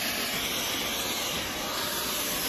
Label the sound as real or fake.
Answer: real